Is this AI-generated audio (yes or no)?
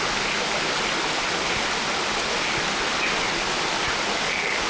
no